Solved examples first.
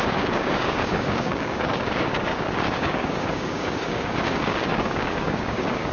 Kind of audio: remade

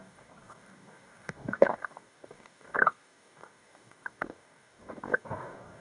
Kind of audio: remade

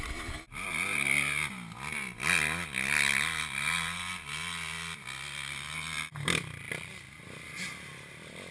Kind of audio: recorded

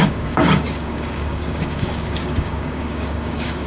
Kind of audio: remade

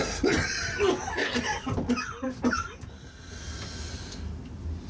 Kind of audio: recorded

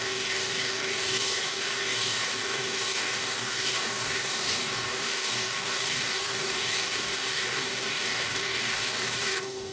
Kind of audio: remade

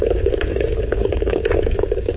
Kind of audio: remade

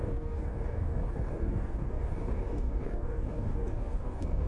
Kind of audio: remade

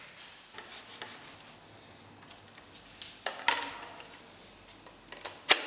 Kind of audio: recorded